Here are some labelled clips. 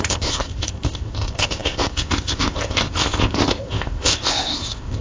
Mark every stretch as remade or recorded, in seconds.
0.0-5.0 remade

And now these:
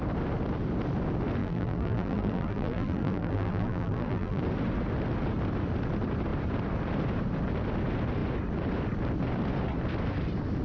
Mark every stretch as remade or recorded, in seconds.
0.0-1.4 recorded; 1.4-4.4 remade; 4.4-10.6 recorded